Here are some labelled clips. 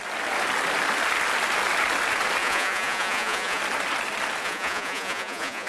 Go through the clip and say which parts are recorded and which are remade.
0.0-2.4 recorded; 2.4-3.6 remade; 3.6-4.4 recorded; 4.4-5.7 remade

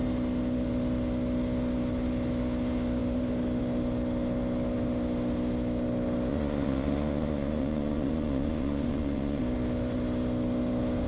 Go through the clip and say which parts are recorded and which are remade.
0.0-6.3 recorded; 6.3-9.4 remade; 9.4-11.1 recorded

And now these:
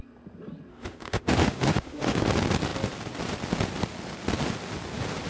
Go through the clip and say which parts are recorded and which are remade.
0.0-0.7 recorded; 0.7-2.3 remade; 2.3-5.3 recorded

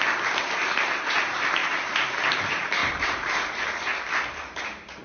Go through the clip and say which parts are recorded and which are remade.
0.0-1.6 recorded; 1.6-2.2 remade; 2.2-2.8 recorded; 2.8-3.6 remade; 3.6-5.0 recorded

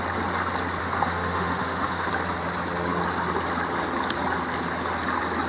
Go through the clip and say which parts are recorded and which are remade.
0.0-0.8 recorded; 0.8-2.1 remade; 2.1-5.5 recorded